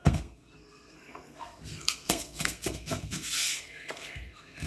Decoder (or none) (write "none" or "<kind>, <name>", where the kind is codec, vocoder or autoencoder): codec, SNAC